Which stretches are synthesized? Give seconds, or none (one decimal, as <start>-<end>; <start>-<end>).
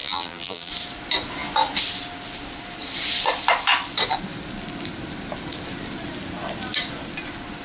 0.0-0.7